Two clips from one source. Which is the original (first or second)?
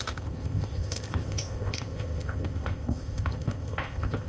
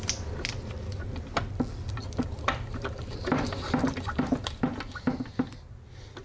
second